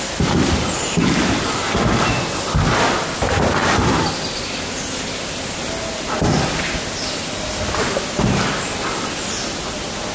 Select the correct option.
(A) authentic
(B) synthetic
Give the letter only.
A